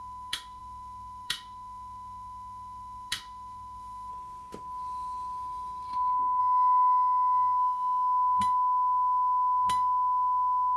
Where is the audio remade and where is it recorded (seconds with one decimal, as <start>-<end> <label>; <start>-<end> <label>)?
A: 0.0-4.1 remade; 4.1-6.4 recorded; 6.4-10.8 remade